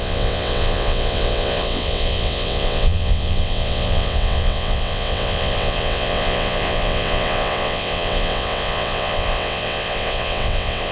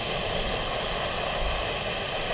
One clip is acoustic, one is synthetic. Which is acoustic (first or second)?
second